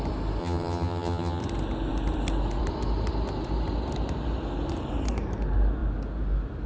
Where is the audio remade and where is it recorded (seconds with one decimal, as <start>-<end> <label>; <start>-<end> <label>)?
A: 0.0-0.4 recorded; 0.4-1.4 remade; 1.4-6.7 recorded